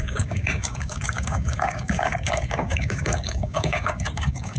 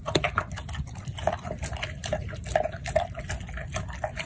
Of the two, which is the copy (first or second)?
first